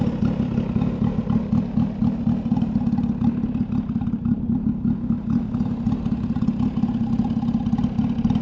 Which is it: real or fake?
real